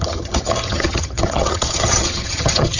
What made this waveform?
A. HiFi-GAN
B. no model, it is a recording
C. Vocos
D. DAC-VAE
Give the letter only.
A